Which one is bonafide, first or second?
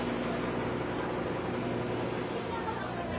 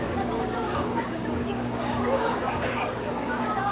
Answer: first